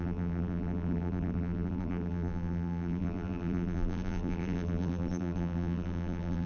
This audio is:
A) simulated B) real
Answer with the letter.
A